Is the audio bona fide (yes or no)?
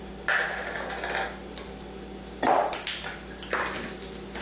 yes